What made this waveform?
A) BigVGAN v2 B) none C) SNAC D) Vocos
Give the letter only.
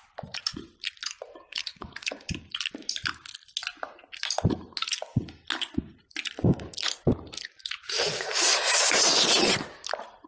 B